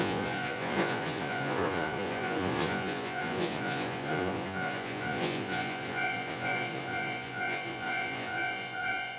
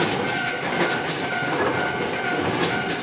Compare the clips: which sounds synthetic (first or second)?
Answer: first